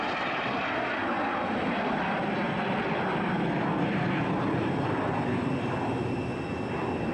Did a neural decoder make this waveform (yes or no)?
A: no